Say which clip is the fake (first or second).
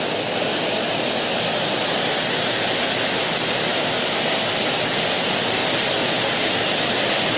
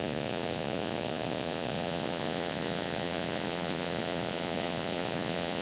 second